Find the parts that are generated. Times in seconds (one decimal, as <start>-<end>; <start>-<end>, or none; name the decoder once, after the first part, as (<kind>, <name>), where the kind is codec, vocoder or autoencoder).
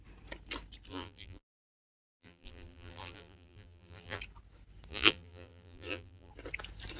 0.9-4.2 (vocoder, BigVGAN v2); 4.9-6.3